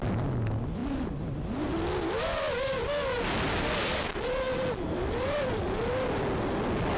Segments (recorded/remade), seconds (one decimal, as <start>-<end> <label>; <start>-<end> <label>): 0.0-7.0 recorded